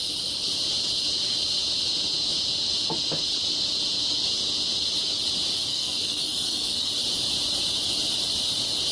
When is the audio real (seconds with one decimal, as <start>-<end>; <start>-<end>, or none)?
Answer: 0.0-5.7; 6.9-8.9